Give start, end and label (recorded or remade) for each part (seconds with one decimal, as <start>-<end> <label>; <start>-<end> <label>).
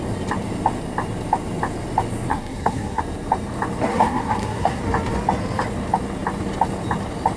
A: 0.0-2.3 recorded; 2.3-3.0 remade; 3.0-3.9 recorded; 3.9-4.8 remade; 4.8-7.4 recorded